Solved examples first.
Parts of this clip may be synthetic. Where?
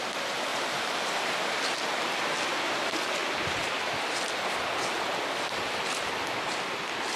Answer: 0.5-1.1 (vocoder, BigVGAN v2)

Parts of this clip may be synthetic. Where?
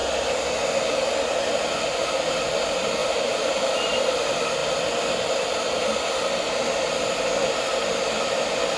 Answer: 3.0-3.7 (vocoder, BigVGAN v2)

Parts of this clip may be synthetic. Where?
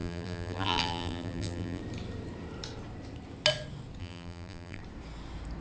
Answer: 0.0-1.8 (vocoder, BigVGAN v2); 4.0-4.8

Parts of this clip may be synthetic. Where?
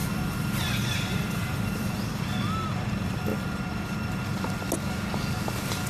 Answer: 0.0-2.2 (vocoder, BigVGAN v2)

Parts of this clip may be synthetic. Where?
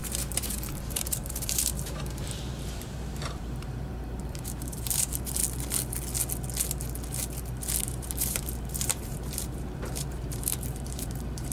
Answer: 0.0-5.4 (vocoder, BigVGAN v2); 7.8-11.5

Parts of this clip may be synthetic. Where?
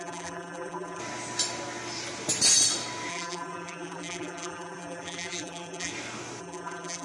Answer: 0.0-1.0 (vocoder, BigVGAN v2); 3.1-5.9; 6.4-7.0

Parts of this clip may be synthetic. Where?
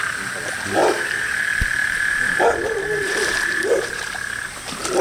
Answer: 0.8-1.4 (vocoder, BigVGAN v2); 1.8-4.6